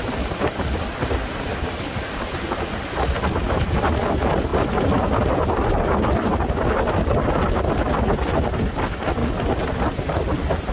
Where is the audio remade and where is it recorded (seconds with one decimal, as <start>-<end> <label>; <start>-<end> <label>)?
0.0-10.7 recorded